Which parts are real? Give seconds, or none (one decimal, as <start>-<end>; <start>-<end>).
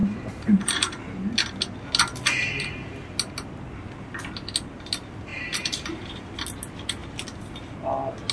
1.0-5.3; 6.2-8.3